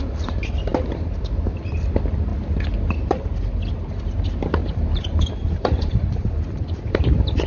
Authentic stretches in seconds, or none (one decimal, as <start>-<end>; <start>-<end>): 0.0-4.6; 5.9-7.5